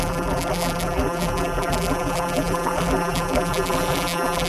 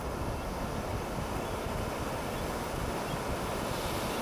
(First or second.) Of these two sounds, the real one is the second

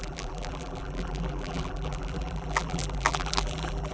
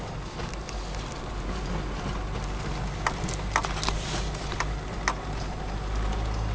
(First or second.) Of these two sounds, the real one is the second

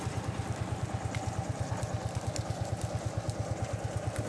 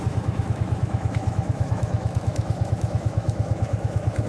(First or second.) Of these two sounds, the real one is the first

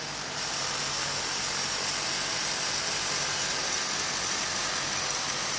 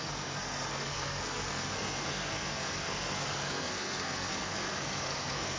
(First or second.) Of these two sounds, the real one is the first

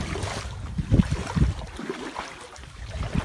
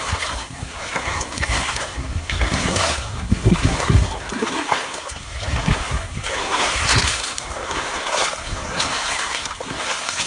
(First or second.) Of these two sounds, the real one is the first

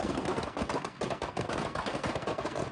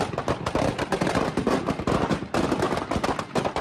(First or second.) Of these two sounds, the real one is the second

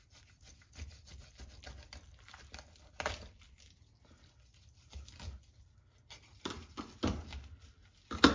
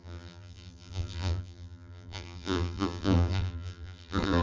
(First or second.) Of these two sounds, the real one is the first